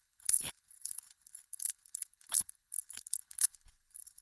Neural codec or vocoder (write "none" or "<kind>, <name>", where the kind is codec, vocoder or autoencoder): codec, HILCodec